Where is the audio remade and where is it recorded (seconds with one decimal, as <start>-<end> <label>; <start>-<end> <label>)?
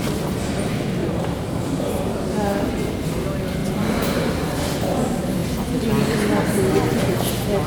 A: 0.0-1.0 recorded; 1.0-1.9 remade; 1.9-3.6 recorded; 3.6-4.3 remade; 4.3-7.7 recorded